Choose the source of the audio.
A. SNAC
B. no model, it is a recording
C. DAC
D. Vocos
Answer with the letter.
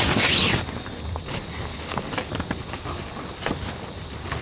B